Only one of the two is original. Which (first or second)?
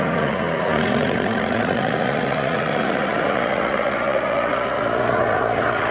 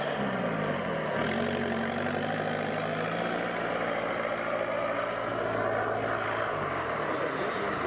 second